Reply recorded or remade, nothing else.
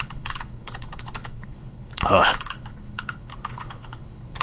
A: remade